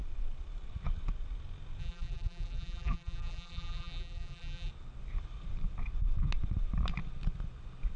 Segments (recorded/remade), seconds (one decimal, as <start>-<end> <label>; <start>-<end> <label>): 0.0-1.8 recorded; 1.8-4.7 remade; 4.7-8.0 recorded